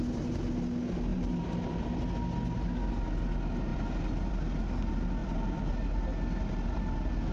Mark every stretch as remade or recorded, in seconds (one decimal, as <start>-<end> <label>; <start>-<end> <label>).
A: 0.0-1.1 recorded; 1.1-2.0 remade; 2.0-5.2 recorded; 5.2-5.7 remade; 5.7-7.3 recorded